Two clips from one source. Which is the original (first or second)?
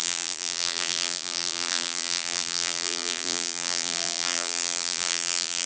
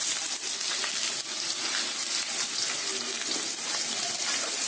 second